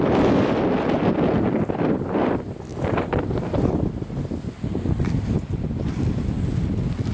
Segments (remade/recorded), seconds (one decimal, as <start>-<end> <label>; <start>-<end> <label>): 0.0-7.1 recorded

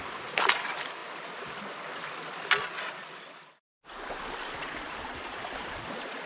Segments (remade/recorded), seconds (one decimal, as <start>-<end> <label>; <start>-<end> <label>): 0.0-1.0 recorded; 1.0-1.5 remade; 1.5-4.6 recorded; 4.6-6.3 remade

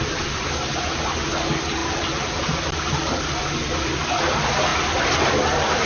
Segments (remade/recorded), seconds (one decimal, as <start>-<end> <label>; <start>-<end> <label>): 0.0-1.8 recorded; 1.8-3.3 remade; 3.3-4.7 recorded; 4.7-5.3 remade; 5.3-5.9 recorded